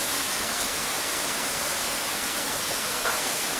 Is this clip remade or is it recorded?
remade